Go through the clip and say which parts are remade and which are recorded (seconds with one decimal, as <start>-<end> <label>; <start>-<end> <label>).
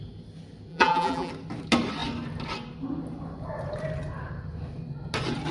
0.0-0.7 recorded; 0.7-1.3 remade; 1.3-5.5 recorded